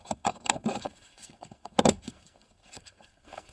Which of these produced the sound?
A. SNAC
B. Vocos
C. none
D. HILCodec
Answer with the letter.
A